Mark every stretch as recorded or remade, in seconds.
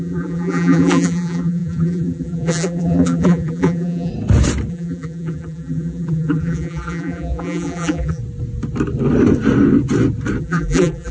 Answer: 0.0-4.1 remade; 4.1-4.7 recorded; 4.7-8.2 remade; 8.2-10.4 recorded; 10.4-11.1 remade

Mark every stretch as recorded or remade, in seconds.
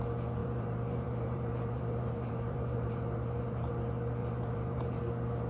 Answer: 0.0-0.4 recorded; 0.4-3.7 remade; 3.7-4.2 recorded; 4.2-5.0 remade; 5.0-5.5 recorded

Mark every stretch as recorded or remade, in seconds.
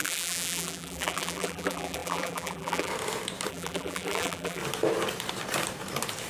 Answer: 0.0-2.9 remade; 2.9-3.5 recorded; 3.5-4.6 remade; 4.6-6.3 recorded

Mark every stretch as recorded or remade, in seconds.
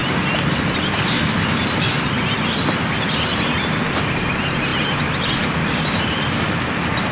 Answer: 0.0-4.7 recorded; 4.7-6.2 remade; 6.2-7.1 recorded